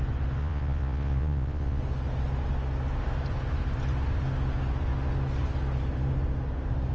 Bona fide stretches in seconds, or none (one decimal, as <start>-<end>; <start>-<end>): 0.0-0.4; 1.8-6.9